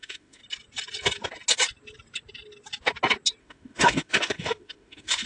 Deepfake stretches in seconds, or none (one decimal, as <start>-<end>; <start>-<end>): 0.0-0.4; 3.4-5.3

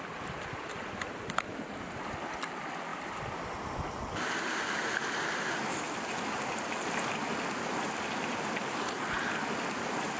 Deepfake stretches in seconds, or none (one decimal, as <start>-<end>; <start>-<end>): none

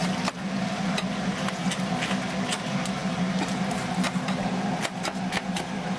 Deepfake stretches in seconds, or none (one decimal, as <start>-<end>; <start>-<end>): none

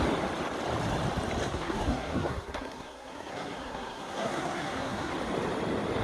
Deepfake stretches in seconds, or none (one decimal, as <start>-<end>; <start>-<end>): 1.5-5.1

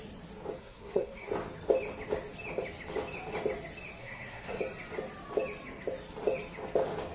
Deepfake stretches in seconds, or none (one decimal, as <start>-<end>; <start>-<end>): 0.6-1.3; 4.0-4.6